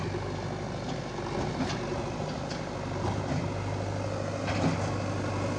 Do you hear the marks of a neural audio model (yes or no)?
no